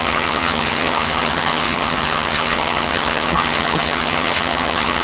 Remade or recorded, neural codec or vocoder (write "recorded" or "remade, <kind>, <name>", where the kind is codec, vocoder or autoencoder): remade, vocoder, HiFi-GAN